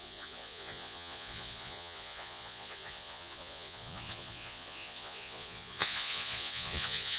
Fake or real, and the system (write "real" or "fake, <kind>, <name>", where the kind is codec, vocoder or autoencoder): fake, vocoder, Vocos